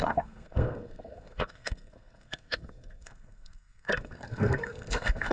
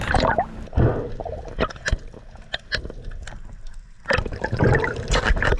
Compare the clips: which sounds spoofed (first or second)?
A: first